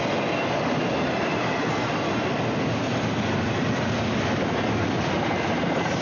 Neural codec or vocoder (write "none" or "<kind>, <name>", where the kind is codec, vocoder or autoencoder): none